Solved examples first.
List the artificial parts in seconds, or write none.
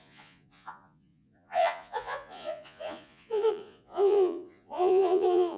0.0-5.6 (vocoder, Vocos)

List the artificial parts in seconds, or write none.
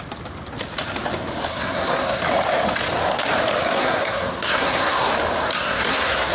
1.5-2.2 (codec, SNAC); 3.6-5.1; 5.5-6.3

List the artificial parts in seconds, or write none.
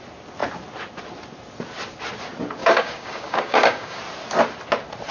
2.6-4.0 (codec, DAC)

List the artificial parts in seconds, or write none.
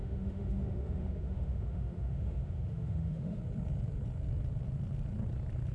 0.0-3.4 (autoencoder, DAC-VAE)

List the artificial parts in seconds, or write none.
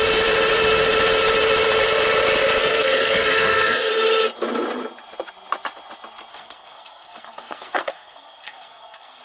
2.6-3.9 (codec, SNAC); 6.3-9.2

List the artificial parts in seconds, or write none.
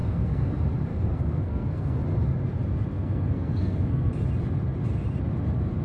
0.0-0.5 (codec, SNAC); 0.9-2.0; 2.9-4.1